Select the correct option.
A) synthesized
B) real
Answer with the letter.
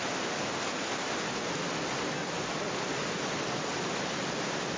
B